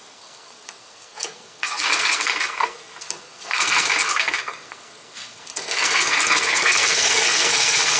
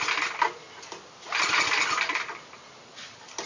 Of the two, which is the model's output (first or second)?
first